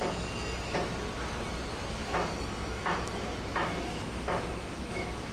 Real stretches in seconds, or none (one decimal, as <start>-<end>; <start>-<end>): 0.0-2.0